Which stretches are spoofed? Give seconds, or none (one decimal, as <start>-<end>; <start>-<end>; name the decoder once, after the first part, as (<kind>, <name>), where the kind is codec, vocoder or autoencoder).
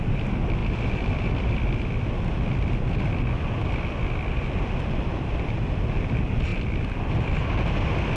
none